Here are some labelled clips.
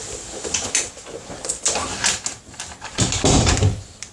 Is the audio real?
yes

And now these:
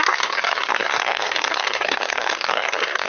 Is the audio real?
no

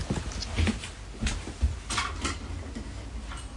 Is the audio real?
yes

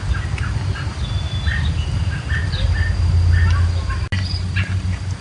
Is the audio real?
yes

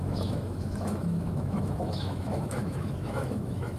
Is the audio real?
no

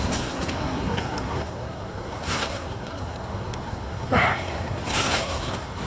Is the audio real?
no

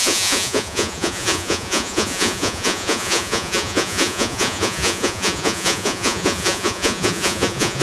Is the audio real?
no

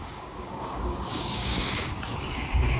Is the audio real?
no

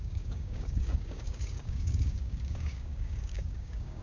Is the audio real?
no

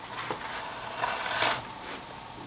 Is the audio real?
yes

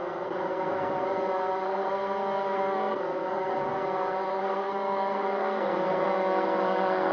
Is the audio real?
no